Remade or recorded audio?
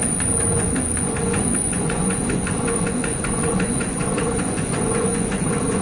remade